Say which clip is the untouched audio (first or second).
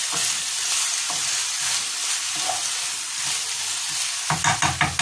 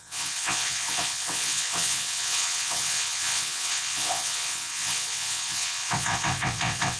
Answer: first